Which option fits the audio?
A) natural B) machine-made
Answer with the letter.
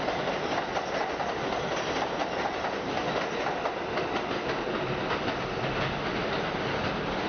A